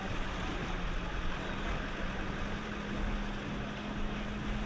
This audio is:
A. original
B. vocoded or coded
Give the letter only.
A